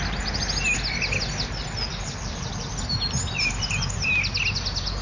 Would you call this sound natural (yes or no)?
yes